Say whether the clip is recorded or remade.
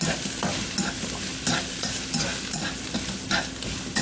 recorded